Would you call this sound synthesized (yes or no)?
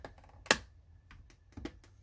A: no